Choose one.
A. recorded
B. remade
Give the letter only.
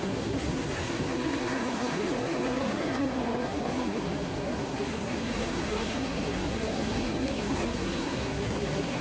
B